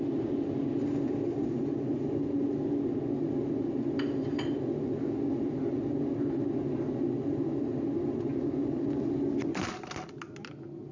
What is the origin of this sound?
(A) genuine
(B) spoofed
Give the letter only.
A